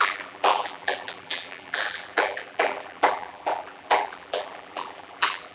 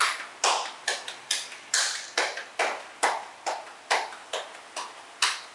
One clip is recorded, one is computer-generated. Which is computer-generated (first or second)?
first